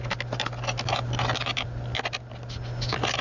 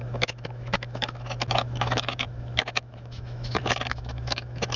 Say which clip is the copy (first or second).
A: second